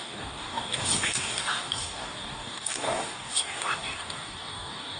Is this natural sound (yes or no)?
no